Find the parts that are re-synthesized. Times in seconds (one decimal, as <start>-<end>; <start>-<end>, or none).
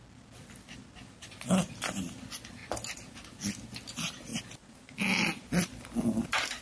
none